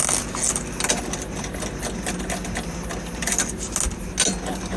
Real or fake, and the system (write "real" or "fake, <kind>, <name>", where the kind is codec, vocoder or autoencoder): real